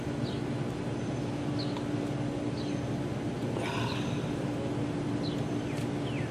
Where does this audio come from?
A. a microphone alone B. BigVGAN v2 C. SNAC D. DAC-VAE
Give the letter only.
A